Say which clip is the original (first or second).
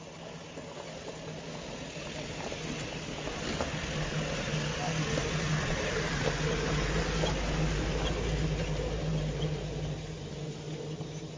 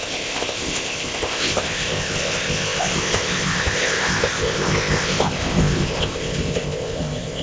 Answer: first